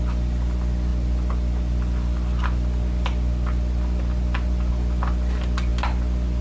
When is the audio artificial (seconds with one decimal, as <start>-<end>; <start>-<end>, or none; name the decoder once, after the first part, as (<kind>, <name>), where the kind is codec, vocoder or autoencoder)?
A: none